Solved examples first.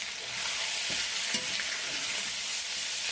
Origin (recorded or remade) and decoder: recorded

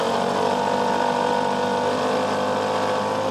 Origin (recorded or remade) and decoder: recorded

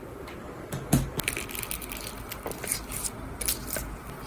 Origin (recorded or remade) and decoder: recorded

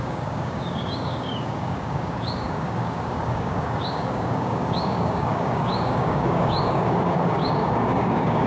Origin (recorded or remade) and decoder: remade, codec, DAC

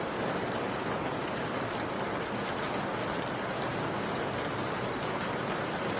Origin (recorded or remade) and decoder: recorded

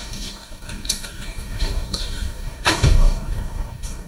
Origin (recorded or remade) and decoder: remade, codec, DAC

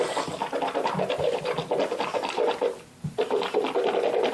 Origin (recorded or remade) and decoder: recorded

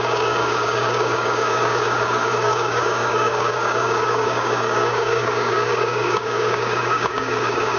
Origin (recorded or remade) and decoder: remade, codec, DAC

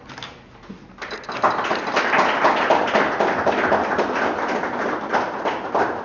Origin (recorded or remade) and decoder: recorded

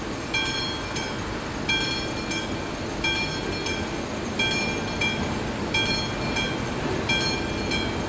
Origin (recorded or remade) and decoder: recorded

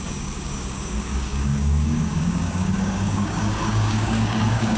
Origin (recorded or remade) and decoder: remade, codec, DAC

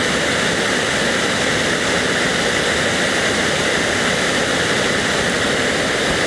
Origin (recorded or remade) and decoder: recorded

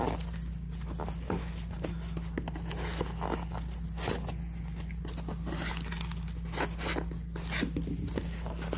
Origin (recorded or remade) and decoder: recorded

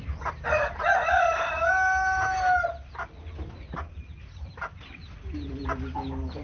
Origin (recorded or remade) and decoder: recorded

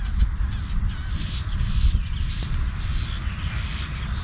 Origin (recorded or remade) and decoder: recorded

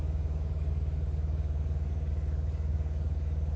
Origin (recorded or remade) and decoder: remade, codec, DAC